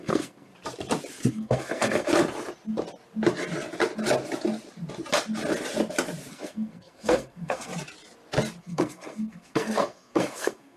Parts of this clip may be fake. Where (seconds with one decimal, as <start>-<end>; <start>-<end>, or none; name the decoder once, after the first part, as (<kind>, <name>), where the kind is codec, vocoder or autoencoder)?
0.0-0.5 (codec, SNAC); 1.3-2.1; 6.3-7.7; 8.6-10.8